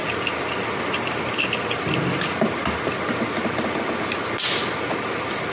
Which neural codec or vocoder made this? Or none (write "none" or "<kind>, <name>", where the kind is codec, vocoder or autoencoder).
none